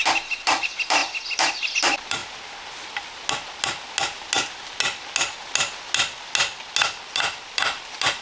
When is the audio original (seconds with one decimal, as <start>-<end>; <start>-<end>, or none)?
2.2-7.1